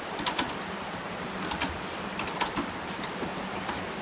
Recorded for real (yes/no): yes